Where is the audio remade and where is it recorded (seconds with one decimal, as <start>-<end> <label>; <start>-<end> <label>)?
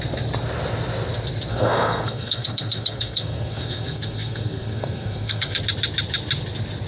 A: 0.0-1.5 recorded; 1.5-5.6 remade; 5.6-6.9 recorded